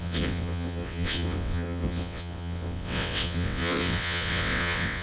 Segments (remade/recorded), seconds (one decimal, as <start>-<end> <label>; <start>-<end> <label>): 0.0-5.0 remade